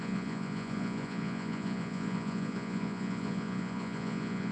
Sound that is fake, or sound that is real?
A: fake